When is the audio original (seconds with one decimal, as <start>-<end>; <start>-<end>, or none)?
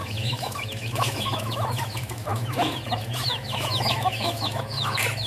none